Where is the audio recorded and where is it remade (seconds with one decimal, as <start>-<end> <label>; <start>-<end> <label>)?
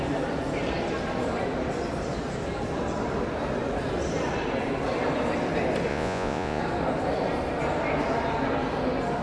0.0-5.9 recorded; 5.9-6.6 remade; 6.6-9.2 recorded